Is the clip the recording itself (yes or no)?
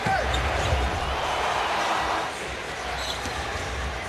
yes